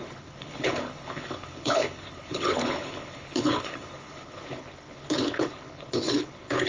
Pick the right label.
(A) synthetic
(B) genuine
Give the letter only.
A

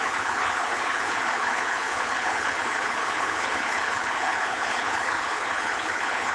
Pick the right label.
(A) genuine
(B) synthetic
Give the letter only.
B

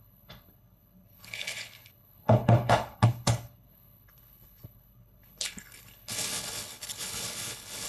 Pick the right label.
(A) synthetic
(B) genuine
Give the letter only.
A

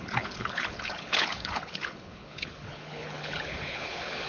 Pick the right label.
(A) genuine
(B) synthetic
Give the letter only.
B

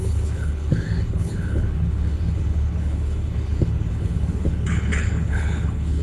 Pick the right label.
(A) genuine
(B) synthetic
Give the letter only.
B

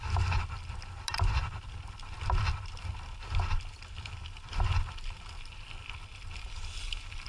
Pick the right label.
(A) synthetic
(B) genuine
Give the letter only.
B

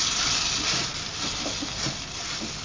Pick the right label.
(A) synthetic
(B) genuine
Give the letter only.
B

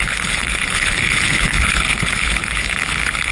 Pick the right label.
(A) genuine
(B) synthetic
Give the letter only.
B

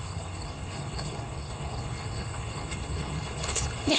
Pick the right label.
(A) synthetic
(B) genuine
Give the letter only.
A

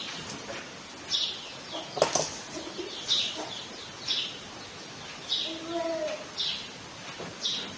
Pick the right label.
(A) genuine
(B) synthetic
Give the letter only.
A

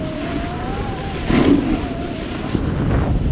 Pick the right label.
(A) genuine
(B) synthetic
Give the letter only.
A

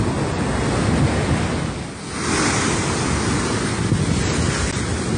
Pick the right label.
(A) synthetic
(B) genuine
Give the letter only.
B